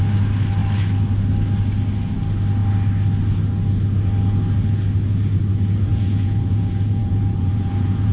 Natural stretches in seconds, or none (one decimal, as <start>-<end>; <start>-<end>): 0.0-5.9